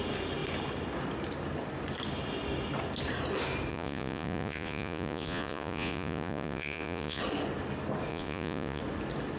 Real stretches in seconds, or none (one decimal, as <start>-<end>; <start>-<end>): 0.0-3.7; 7.2-8.1; 8.8-9.4